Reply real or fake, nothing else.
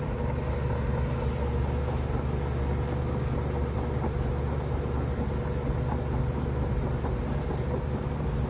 real